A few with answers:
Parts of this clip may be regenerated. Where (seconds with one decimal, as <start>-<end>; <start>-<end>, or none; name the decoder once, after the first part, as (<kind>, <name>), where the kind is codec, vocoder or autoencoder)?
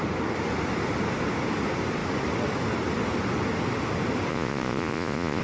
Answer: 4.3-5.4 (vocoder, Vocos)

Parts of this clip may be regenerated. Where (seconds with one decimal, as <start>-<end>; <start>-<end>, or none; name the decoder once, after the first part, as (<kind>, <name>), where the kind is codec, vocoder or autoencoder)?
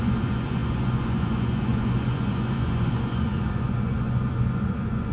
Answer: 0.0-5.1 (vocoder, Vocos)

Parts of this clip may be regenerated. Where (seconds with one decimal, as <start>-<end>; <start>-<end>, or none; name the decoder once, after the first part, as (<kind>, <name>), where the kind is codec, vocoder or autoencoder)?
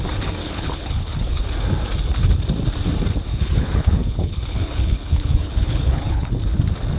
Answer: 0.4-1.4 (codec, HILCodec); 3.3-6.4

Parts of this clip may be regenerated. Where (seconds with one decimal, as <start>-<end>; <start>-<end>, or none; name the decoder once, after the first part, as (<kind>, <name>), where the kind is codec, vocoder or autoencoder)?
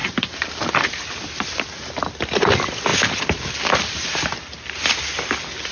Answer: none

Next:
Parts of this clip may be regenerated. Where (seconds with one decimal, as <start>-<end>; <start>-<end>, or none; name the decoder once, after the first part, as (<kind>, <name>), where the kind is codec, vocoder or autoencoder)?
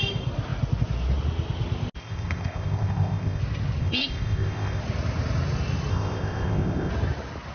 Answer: 2.0-3.4 (codec, ZipCodec); 3.8-4.8; 5.9-6.9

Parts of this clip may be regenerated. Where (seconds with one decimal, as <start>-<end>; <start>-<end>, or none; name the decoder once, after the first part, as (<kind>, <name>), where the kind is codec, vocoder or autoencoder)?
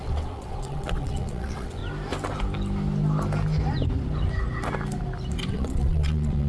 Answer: 0.0-1.8 (vocoder, WaveNeXt); 5.5-6.5